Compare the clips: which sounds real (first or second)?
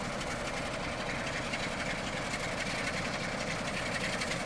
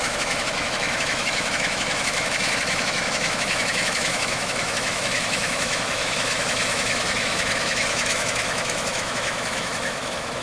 first